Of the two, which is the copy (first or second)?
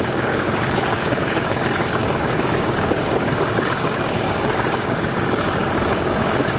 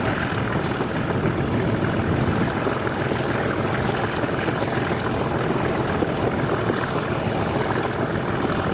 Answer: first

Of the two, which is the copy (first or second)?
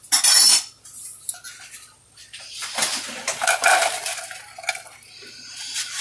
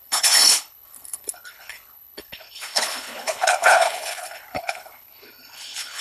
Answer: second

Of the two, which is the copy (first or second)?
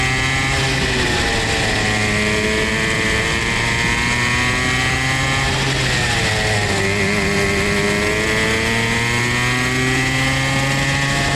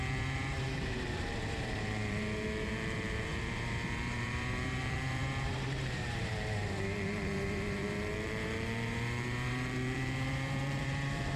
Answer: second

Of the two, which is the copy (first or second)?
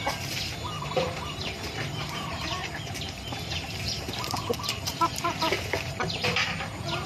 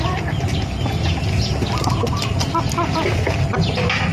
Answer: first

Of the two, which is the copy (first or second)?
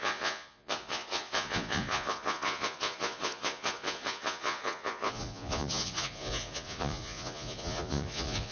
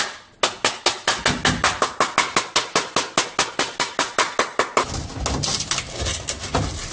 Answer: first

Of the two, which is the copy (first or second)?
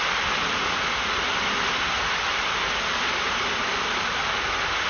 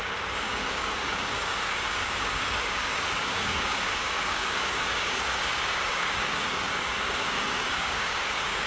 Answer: second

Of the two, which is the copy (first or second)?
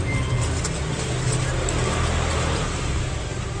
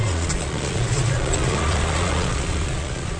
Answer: second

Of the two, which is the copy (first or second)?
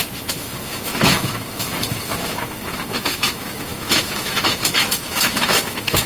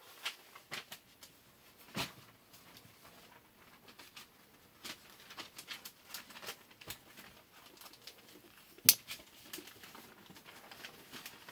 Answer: first